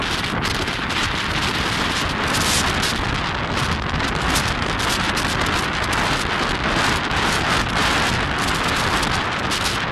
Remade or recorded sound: recorded